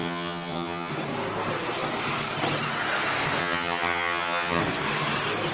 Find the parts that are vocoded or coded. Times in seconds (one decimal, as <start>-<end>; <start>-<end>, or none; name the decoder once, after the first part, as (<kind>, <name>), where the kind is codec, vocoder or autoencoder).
0.0-0.9 (vocoder, HiFi-GAN); 3.4-4.6